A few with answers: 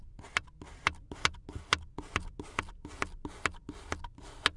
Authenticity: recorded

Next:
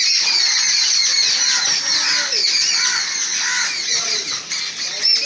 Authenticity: recorded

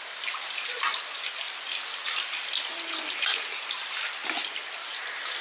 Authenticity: recorded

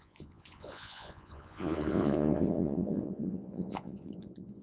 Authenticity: remade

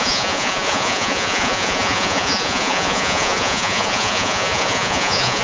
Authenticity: remade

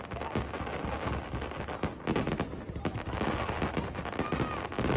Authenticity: recorded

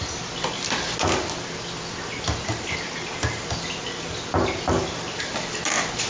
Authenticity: recorded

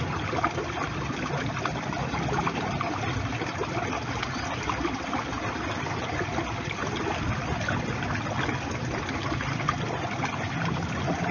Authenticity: recorded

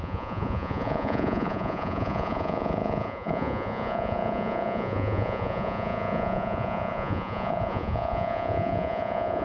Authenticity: remade